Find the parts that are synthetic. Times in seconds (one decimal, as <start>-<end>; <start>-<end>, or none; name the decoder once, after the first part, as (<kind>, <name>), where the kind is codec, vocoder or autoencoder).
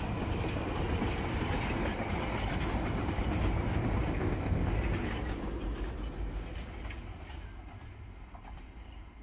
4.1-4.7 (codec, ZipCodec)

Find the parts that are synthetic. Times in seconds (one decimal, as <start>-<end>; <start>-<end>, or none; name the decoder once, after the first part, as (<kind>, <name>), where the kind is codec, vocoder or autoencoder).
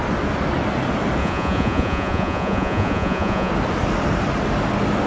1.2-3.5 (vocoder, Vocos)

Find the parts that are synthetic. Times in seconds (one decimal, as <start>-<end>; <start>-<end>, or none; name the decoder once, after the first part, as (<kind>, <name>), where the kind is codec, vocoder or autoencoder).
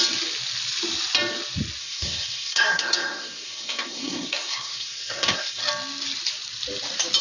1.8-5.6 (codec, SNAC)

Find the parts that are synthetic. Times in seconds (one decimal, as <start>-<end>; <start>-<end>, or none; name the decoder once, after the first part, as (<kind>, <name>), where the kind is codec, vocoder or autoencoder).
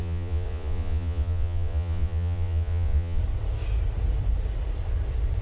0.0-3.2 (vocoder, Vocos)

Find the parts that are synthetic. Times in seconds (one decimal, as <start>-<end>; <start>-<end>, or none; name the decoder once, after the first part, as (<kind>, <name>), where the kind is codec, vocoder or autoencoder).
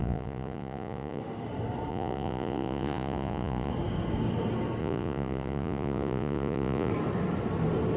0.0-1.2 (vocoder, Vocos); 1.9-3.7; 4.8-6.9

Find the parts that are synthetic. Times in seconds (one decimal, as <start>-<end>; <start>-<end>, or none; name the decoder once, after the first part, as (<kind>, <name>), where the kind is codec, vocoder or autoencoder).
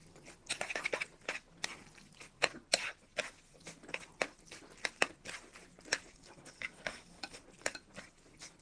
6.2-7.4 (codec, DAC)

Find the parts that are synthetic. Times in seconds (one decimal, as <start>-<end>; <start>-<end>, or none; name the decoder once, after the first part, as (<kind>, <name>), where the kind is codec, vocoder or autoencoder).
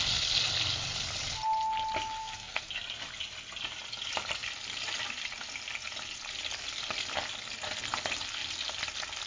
2.2-2.7 (codec, SNAC)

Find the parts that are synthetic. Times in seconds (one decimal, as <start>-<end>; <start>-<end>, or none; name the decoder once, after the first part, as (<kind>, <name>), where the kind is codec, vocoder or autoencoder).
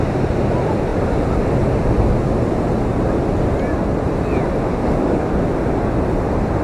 4.7-5.3 (codec, DAC)